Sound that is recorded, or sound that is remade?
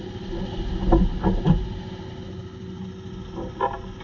recorded